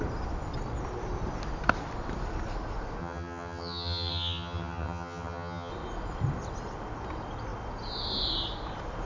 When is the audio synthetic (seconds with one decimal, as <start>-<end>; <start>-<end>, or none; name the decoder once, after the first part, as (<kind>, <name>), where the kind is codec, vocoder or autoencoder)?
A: 3.0-5.7 (vocoder, HiFi-GAN)